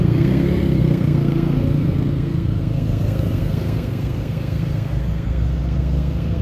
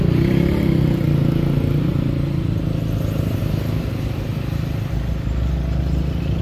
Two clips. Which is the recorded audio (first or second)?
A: second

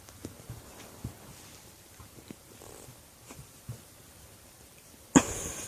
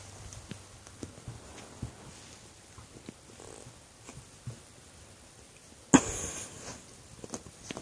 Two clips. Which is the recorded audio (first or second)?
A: second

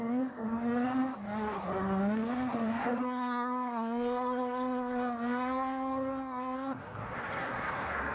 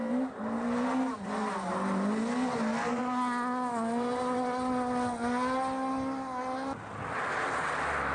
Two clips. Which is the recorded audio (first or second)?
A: second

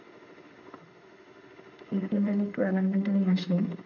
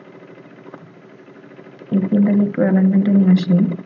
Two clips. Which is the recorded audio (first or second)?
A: second